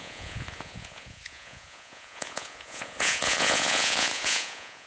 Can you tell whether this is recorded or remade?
remade